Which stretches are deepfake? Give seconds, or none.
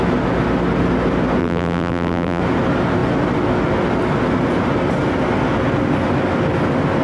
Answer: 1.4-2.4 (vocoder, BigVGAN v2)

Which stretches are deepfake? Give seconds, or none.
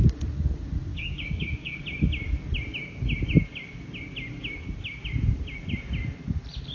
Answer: 0.9-1.8 (codec, DAC)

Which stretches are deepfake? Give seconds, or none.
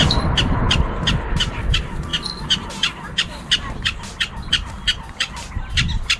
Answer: none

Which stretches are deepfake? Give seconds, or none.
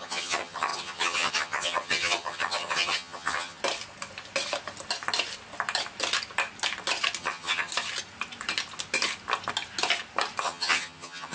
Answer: 0.0-3.6 (vocoder, HiFi-GAN); 7.2-7.7; 10.4-11.3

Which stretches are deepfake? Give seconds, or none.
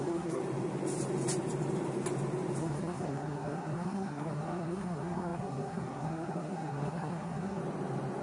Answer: 0.0-0.4 (codec, SNAC); 2.6-7.6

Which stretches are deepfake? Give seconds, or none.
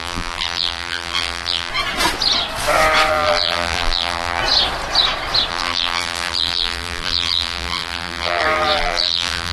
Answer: 0.0-1.7 (vocoder, BigVGAN v2); 3.1-4.4; 5.5-9.5